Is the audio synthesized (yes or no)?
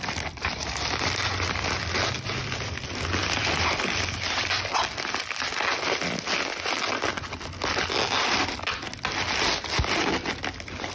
no